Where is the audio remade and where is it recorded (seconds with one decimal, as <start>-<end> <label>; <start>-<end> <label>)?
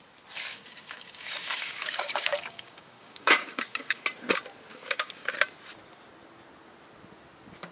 0.0-0.5 recorded; 0.5-4.0 remade; 4.0-4.7 recorded; 4.7-5.3 remade; 5.3-7.7 recorded